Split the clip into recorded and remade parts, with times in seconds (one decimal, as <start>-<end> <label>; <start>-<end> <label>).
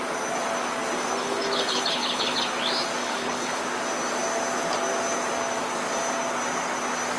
0.0-1.2 recorded; 1.2-2.4 remade; 2.4-3.0 recorded; 3.0-3.6 remade; 3.6-7.2 recorded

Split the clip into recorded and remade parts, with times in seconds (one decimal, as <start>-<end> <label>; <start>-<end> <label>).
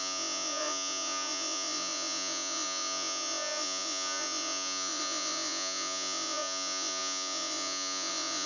0.0-8.5 remade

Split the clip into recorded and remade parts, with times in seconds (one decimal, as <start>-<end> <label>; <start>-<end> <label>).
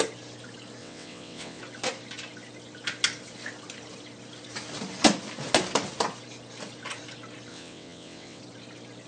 0.0-0.8 recorded; 0.8-1.6 remade; 1.6-7.5 recorded; 7.5-8.4 remade; 8.4-9.1 recorded